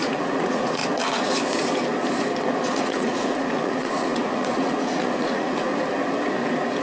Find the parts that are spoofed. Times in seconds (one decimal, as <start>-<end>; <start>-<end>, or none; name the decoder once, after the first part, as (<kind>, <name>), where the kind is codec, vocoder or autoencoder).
0.0-0.8 (vocoder, Vocos); 2.8-5.7